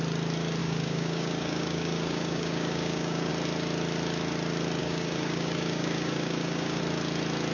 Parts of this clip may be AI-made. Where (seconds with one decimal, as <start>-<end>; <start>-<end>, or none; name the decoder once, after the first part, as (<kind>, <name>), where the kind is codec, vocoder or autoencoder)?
0.6-3.3 (codec, DAC); 4.8-6.8